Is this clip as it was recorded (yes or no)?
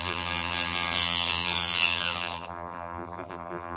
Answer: no